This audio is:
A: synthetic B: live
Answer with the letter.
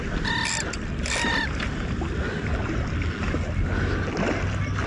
B